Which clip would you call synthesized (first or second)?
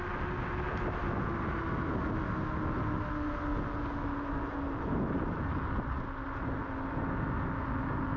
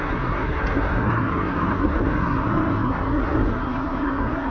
second